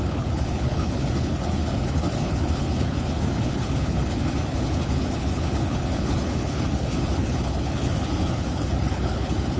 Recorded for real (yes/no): no